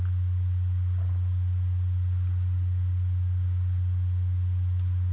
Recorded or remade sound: recorded